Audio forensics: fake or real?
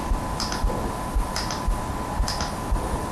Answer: real